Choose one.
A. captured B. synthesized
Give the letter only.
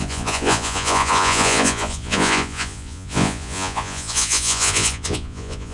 B